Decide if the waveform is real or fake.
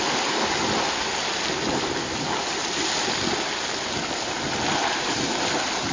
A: real